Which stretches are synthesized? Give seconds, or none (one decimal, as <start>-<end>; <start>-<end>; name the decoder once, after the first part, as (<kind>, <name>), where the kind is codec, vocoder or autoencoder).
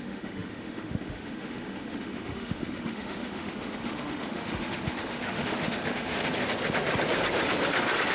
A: 0.0-6.2 (autoencoder, DAC-VAE)